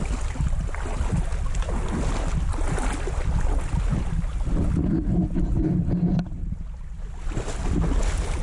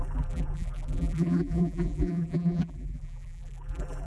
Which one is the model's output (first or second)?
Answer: second